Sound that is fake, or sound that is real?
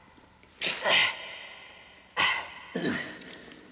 real